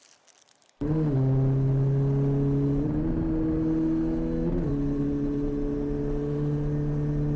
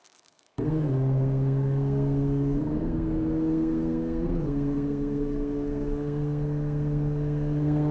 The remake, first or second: second